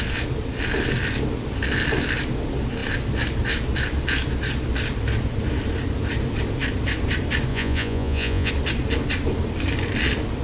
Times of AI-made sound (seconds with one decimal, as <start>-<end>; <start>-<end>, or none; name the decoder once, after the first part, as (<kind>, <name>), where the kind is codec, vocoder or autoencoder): 7.5-8.5 (vocoder, Vocos)